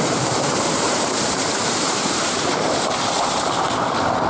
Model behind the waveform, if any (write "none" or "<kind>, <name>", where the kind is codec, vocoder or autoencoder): vocoder, BigVGAN v2